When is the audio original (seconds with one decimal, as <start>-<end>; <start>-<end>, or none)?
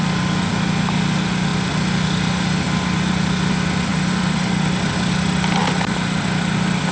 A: 0.0-6.9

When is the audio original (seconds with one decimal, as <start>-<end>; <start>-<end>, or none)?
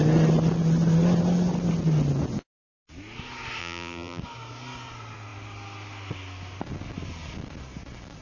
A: 0.0-3.6; 4.2-8.2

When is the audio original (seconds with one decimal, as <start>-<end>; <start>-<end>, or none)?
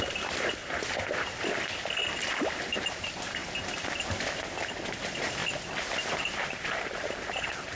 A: 0.6-2.9; 3.4-4.9; 5.4-6.2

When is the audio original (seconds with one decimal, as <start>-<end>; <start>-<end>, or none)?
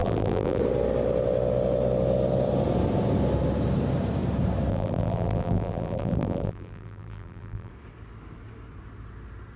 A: 0.6-4.7; 7.7-9.6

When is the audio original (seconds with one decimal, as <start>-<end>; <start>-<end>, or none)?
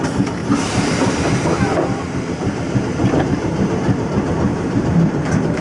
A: 0.0-0.4; 1.1-3.0; 4.1-4.5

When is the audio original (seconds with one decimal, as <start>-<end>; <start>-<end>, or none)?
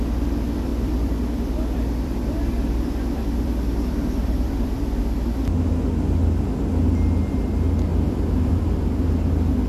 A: 0.0-0.7; 5.0-7.9; 8.6-9.7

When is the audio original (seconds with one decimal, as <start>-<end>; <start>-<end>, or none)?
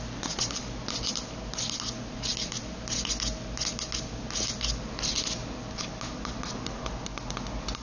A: 0.0-7.8